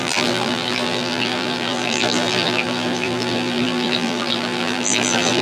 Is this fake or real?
fake